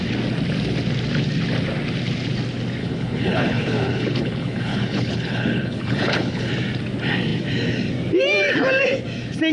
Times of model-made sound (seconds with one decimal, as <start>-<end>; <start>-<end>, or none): 2.8-6.5